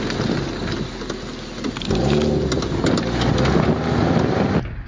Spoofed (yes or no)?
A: no